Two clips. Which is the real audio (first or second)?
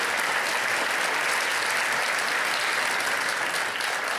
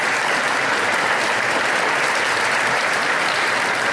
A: first